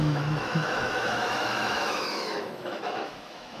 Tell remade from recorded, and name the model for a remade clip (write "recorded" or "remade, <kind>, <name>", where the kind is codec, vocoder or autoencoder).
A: remade, autoencoder, DAC-VAE